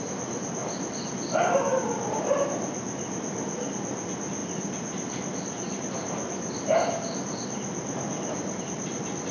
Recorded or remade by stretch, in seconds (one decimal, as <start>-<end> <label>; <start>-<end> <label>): 0.0-9.3 recorded